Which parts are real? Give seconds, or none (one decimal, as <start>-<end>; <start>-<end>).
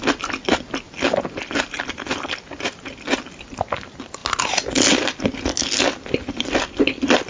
0.0-7.3